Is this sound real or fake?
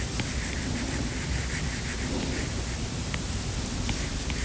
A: real